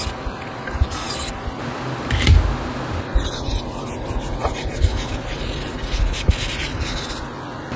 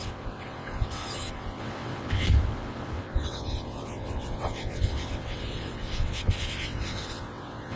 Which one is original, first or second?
first